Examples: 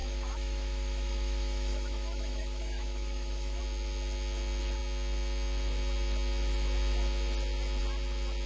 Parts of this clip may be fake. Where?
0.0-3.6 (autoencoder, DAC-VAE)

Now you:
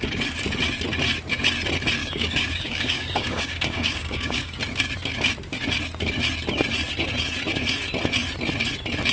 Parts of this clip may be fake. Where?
2.0-4.6 (codec, DAC)

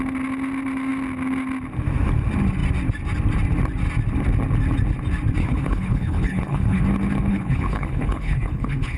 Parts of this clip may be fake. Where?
5.4-6.8 (codec, HILCodec); 7.3-9.0

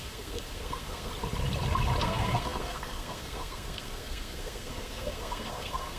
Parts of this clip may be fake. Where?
0.0-1.1 (codec, SNAC); 2.0-6.0